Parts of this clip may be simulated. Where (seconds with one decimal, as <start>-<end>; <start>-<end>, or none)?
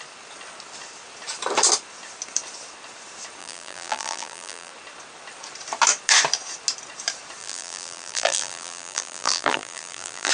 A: 3.4-4.7; 7.4-10.3